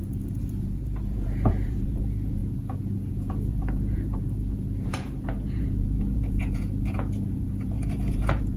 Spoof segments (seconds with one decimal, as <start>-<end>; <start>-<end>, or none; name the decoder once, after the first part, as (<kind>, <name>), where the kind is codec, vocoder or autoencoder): 0.0-8.6 (vocoder, Vocos)